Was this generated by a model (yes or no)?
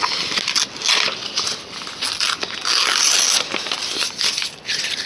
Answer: no